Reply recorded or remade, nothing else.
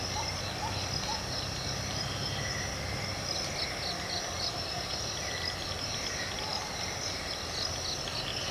recorded